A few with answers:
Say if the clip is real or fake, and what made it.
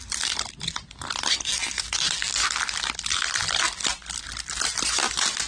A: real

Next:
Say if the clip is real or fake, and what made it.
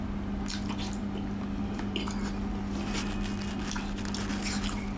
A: real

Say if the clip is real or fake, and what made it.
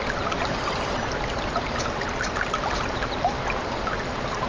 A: real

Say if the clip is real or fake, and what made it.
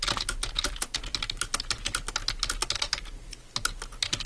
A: real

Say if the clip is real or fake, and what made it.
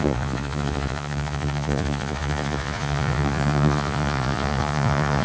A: fake, vocoder, Vocos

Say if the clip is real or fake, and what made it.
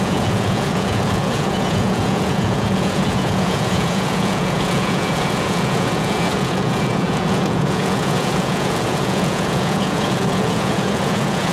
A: fake, vocoder, Vocos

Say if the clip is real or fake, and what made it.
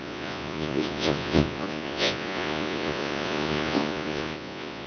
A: fake, vocoder, Vocos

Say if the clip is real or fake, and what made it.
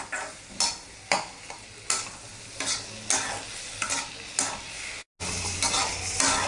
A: real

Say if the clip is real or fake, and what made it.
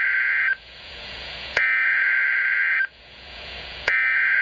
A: fake, vocoder, Vocos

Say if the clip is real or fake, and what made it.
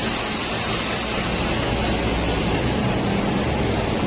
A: real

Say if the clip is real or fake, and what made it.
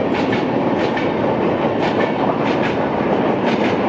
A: real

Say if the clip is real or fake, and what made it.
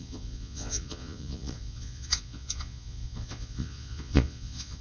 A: fake, vocoder, Vocos